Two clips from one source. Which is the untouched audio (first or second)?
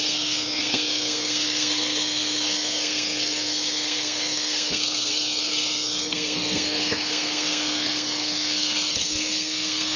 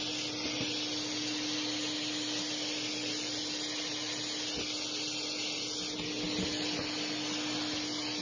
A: second